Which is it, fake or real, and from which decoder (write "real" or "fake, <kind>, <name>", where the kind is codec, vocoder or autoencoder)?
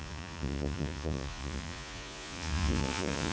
fake, vocoder, Vocos